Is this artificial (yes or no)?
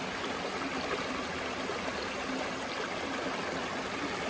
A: no